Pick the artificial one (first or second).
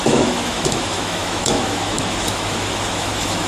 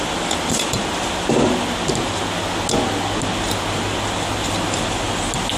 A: first